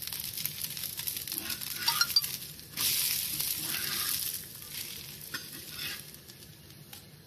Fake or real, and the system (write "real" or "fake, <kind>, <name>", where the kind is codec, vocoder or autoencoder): real